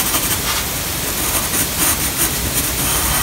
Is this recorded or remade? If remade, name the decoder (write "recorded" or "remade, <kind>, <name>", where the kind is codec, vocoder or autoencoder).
recorded